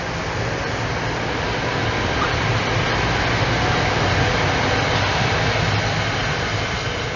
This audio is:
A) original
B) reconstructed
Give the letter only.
A